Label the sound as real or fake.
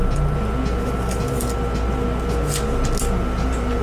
real